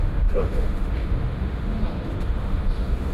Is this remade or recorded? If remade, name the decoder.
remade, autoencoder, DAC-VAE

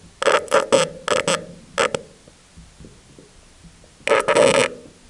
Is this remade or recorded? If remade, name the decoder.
recorded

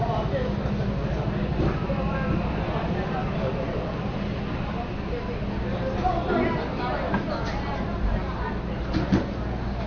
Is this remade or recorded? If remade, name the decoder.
recorded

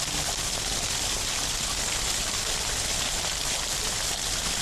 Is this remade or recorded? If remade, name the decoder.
recorded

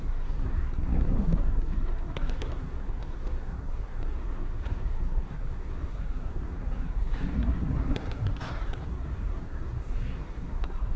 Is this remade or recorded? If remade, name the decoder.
remade, codec, SNAC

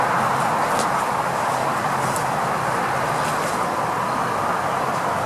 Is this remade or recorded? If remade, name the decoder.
recorded